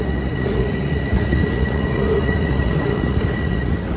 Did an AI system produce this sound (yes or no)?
yes